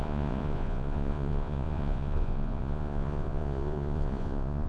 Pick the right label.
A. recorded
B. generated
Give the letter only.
B